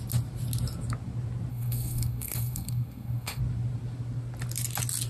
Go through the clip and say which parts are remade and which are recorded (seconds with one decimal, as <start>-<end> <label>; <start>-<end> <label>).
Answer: 0.0-1.5 recorded; 1.5-3.4 remade; 3.4-5.1 recorded